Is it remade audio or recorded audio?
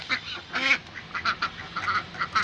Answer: recorded